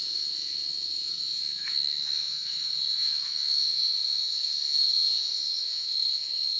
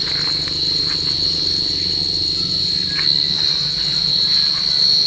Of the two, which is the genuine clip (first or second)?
second